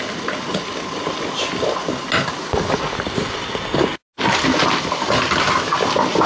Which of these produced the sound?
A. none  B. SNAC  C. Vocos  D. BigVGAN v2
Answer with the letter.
A